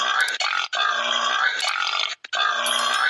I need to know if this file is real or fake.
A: real